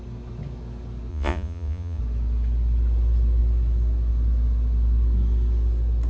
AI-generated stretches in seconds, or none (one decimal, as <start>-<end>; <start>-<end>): 1.1-2.0